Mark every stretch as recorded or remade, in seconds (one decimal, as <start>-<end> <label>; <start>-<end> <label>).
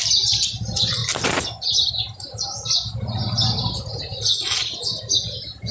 0.0-5.7 recorded